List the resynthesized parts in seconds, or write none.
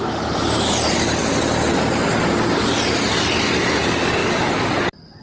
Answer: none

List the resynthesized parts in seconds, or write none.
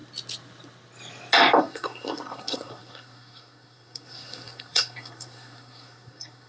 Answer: 1.6-6.5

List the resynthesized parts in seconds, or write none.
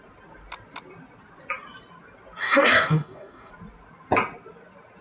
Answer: 2.4-3.5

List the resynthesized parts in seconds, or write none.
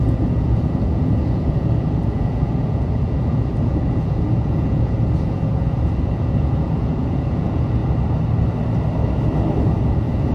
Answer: 0.0-7.8; 9.8-10.3